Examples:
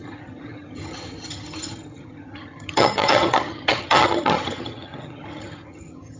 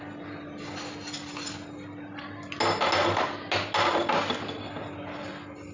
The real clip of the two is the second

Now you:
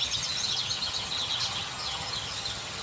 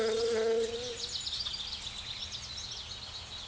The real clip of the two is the second